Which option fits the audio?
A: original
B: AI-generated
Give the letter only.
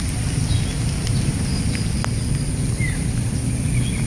B